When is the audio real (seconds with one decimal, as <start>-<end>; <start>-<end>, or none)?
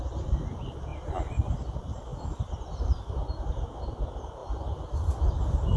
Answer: none